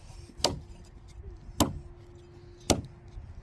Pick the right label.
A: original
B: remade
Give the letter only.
A